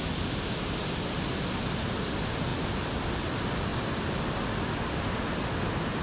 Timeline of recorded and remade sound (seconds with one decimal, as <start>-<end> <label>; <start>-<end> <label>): 0.0-6.0 recorded